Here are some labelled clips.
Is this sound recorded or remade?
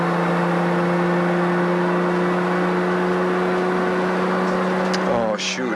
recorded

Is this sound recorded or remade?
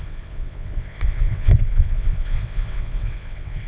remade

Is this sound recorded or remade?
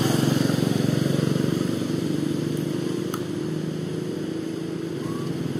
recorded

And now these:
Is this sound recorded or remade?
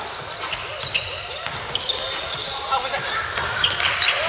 recorded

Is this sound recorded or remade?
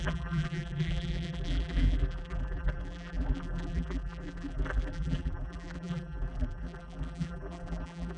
remade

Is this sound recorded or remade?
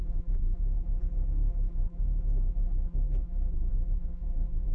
remade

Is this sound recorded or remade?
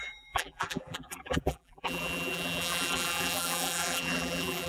remade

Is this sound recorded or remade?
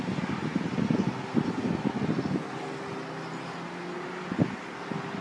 recorded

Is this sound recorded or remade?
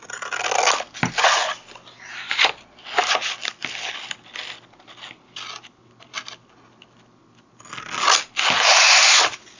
recorded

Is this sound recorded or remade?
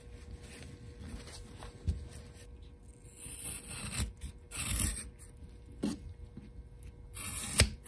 recorded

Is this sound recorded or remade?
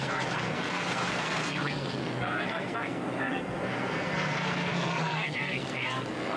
remade